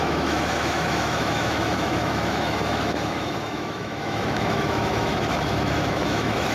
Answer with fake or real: fake